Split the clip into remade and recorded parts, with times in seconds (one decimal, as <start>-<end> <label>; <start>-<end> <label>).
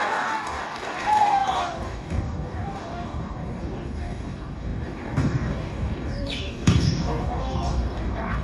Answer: 0.0-8.4 remade